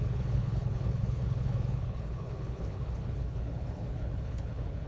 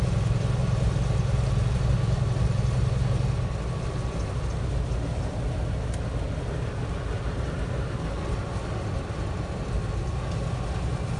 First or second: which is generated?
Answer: first